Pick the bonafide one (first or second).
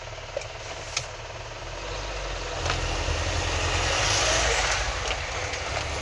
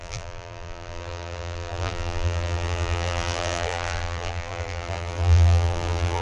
first